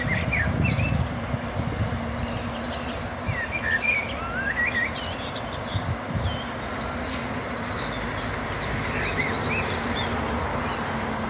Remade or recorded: recorded